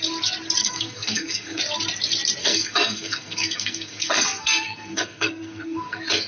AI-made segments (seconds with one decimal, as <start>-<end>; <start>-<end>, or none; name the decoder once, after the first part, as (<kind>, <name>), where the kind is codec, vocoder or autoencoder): 0.6-1.6 (codec, SNAC); 2.4-6.3